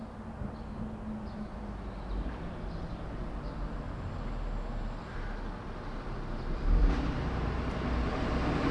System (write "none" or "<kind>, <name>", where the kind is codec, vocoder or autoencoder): none